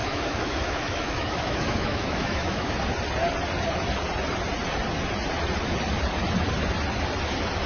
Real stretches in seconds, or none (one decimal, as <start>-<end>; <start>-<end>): 2.7-7.7